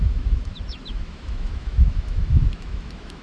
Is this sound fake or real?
fake